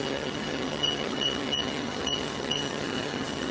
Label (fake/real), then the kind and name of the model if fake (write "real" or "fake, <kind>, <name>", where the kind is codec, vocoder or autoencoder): fake, vocoder, HiFi-GAN